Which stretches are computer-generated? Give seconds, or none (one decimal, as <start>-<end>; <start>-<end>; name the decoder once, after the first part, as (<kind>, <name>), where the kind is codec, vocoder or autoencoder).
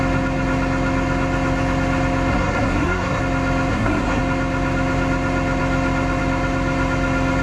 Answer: 2.3-3.2 (codec, SNAC); 3.7-4.2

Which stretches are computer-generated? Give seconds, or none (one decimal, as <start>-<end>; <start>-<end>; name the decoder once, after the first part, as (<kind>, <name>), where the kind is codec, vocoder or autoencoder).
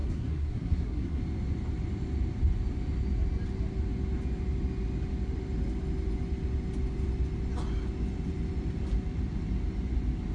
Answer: 0.0-1.2 (codec, SNAC)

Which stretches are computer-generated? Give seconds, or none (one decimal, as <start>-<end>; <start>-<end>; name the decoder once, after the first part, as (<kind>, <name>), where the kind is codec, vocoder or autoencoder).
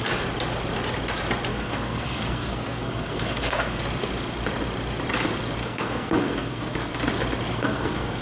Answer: 1.5-3.8 (codec, SNAC); 5.6-7.0; 7.5-8.2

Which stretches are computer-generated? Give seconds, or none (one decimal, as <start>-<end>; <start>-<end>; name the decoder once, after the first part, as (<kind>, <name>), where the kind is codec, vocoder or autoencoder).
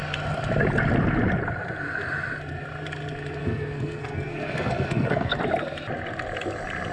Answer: 3.4-5.4 (codec, SNAC)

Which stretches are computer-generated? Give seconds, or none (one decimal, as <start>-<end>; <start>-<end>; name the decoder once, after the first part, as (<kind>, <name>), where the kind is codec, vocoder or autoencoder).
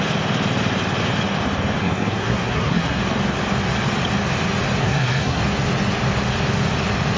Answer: 1.8-3.0 (codec, SNAC); 4.8-5.4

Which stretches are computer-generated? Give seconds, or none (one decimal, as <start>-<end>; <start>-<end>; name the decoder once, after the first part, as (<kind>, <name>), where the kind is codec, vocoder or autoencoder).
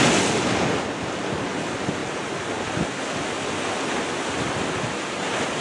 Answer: none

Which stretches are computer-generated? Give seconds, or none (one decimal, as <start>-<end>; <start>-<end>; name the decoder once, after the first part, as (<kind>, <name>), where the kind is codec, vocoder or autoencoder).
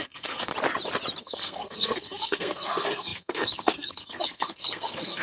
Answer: 0.0-0.5 (codec, SNAC); 1.2-5.2